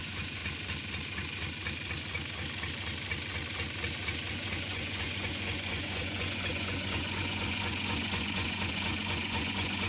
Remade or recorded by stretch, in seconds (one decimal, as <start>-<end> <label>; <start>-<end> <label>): 0.0-0.4 remade; 0.4-4.3 recorded; 4.3-9.9 remade